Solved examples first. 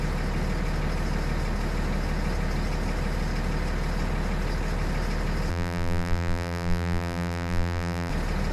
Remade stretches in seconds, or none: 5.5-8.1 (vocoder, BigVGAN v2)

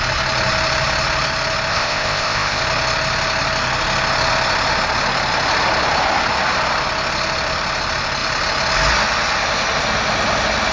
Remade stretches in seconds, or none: 1.7-2.6 (codec, ZipCodec)

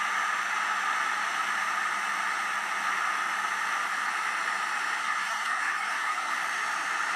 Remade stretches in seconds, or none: 5.0-6.3 (codec, SNAC)

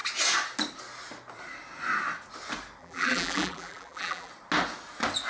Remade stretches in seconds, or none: 2.8-4.3 (vocoder, BigVGAN v2)

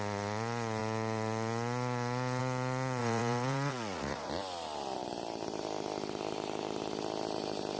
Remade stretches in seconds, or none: 3.0-4.3 (vocoder, Vocos)

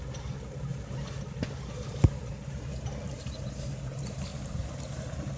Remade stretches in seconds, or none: none

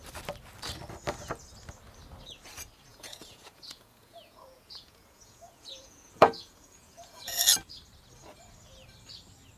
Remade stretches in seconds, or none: 2.9-7.4 (vocoder, Vocos)

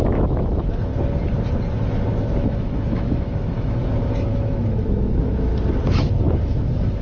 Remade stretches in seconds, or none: 0.0-0.9 (autoencoder, DAC-VAE); 2.2-5.5; 6.1-7.0